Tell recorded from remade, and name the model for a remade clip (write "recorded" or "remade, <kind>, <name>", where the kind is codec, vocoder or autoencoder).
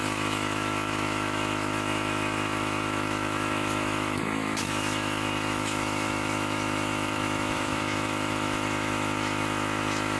remade, autoencoder, DAC-VAE